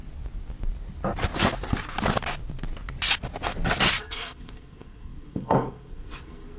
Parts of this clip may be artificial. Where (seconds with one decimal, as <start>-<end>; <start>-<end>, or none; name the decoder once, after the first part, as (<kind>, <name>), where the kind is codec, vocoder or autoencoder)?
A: 4.0-6.6 (codec, SNAC)